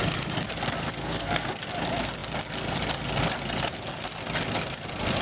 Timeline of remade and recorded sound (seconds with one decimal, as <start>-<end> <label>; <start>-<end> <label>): 0.0-1.0 recorded; 1.0-1.6 remade; 1.6-5.2 recorded